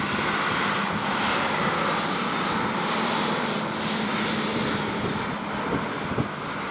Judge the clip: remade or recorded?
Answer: recorded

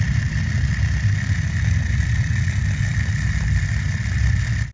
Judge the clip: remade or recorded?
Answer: recorded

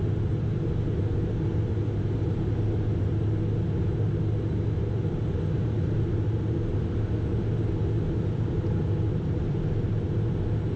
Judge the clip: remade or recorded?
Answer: recorded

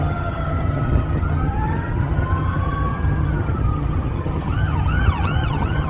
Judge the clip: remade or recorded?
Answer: remade